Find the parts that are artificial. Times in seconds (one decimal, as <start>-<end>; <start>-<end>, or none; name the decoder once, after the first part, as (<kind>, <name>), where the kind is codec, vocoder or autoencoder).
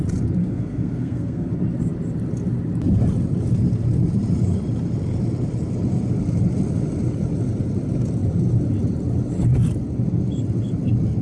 0.4-1.5 (codec, SNAC)